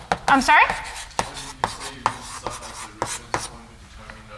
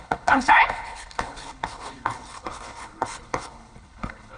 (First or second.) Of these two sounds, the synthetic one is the second